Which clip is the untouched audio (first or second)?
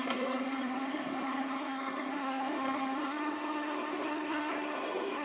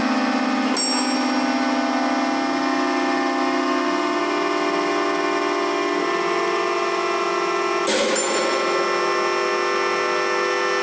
second